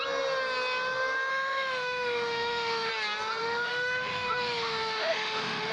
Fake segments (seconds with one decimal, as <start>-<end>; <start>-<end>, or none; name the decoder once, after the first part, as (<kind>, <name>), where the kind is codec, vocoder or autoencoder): 1.3-2.9 (autoencoder, DAC-VAE); 3.4-5.7